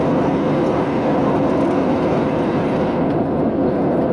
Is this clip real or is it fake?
real